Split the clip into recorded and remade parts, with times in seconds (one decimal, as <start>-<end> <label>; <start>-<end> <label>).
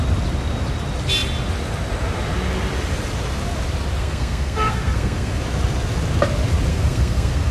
0.0-4.0 recorded; 4.0-5.4 remade; 5.4-6.7 recorded; 6.7-7.5 remade